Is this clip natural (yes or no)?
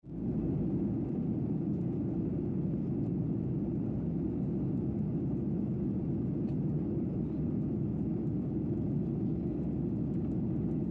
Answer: yes